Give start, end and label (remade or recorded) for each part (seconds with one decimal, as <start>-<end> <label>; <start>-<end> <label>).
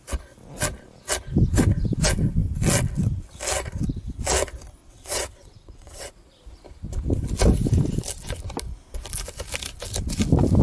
0.0-4.8 recorded; 4.8-6.1 remade; 6.1-10.6 recorded